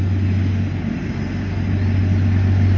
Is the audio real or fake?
real